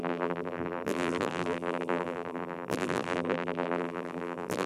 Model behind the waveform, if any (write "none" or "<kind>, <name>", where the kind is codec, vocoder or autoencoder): vocoder, BigVGAN v2